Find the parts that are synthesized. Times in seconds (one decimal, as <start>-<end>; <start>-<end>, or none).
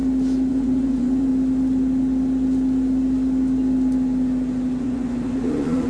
0.5-1.3; 4.8-5.9